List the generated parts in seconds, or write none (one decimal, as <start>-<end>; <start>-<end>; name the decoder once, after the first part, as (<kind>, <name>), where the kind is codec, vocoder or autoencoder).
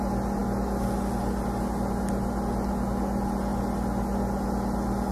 none